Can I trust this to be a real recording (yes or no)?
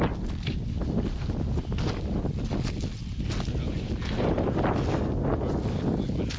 yes